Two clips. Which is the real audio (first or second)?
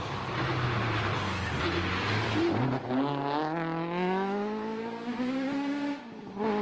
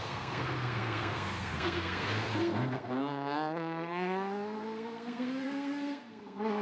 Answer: first